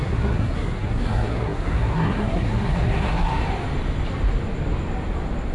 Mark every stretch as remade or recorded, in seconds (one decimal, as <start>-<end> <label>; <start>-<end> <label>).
0.0-3.3 remade; 3.3-5.5 recorded